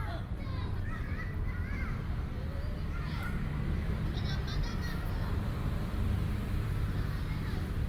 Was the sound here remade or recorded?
remade